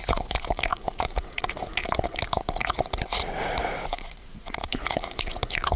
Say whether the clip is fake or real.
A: fake